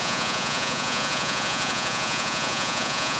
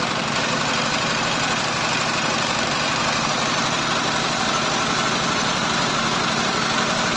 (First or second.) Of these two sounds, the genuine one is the second